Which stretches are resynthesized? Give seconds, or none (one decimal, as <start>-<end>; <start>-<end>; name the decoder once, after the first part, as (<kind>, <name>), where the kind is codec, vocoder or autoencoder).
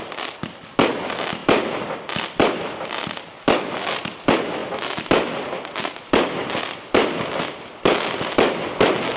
none